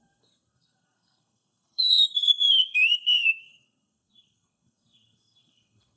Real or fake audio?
fake